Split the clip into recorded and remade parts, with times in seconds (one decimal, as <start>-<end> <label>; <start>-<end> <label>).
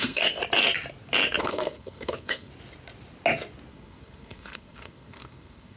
0.0-0.4 remade; 0.4-1.4 recorded; 1.4-2.5 remade; 2.5-3.7 recorded; 3.7-5.8 remade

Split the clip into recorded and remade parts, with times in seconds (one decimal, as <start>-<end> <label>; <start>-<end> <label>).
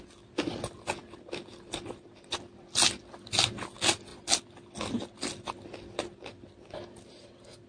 0.0-7.7 recorded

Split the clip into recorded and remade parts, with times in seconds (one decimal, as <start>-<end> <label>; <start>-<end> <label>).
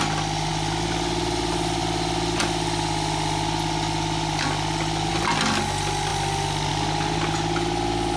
0.0-8.2 recorded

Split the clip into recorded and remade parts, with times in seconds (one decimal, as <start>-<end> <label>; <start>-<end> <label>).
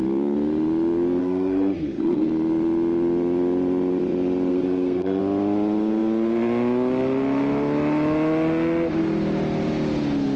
0.0-1.2 recorded; 1.2-2.3 remade; 2.3-4.5 recorded; 4.5-5.2 remade; 5.2-10.4 recorded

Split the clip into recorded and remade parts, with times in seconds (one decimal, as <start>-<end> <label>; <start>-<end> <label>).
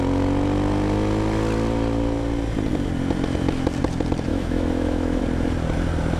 0.0-4.3 recorded; 4.3-5.2 remade; 5.2-6.2 recorded